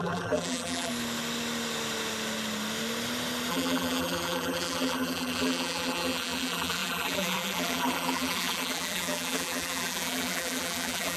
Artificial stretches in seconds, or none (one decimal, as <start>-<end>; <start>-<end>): 0.0-0.9; 3.5-11.2